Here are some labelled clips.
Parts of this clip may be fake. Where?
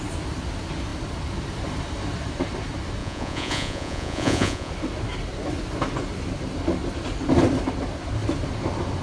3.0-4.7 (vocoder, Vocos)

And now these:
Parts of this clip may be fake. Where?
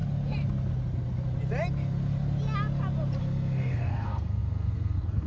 3.2-5.3 (codec, SNAC)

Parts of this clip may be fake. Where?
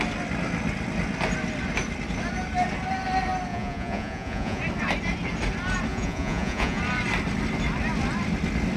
3.5-4.6 (vocoder, Vocos); 5.9-6.8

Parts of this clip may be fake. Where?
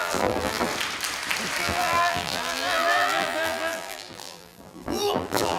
0.0-0.7 (vocoder, BigVGAN v2); 1.6-5.6